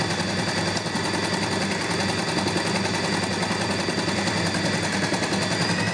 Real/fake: real